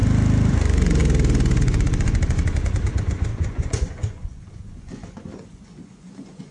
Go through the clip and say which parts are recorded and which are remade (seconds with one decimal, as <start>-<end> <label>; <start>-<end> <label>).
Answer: 0.0-0.5 recorded; 0.5-1.0 remade; 1.0-1.6 recorded; 1.6-6.5 remade